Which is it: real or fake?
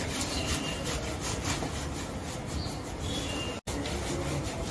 real